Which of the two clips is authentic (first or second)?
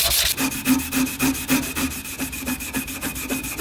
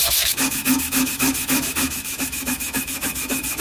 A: first